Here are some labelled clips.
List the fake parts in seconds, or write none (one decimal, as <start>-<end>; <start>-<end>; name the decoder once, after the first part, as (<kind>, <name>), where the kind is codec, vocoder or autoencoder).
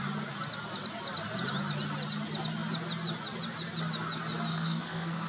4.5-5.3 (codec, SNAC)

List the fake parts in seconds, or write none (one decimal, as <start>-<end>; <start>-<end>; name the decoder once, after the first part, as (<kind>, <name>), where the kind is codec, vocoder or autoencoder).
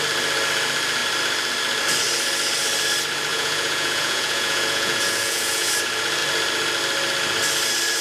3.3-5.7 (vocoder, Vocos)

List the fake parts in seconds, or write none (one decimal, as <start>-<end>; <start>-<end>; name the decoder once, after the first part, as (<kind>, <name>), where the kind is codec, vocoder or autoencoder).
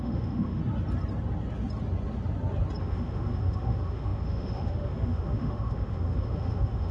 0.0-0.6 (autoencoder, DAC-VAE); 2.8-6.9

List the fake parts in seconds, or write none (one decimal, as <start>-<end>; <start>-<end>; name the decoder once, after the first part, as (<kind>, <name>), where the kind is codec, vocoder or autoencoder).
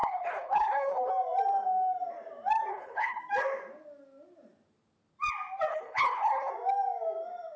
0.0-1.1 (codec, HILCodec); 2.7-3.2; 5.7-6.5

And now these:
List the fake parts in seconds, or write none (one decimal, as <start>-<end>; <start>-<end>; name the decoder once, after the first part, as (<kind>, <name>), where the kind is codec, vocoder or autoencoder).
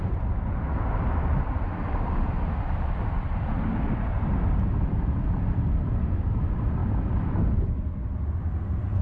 0.0-6.8 (vocoder, BigVGAN v2); 8.2-9.0